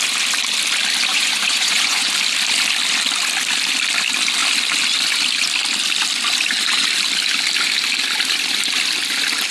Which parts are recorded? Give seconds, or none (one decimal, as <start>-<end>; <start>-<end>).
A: 0.0-1.1; 2.1-9.5